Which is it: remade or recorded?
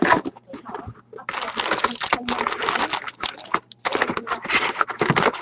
recorded